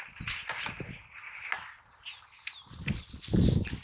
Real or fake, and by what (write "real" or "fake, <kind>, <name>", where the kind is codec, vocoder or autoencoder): real